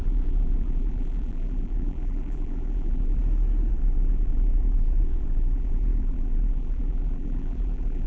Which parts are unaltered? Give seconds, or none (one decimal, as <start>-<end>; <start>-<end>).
3.2-3.7